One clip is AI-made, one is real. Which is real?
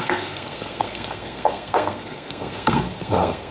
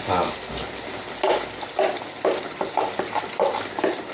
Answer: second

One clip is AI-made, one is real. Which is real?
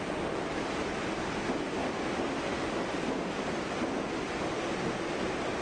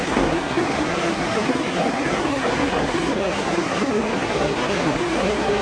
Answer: first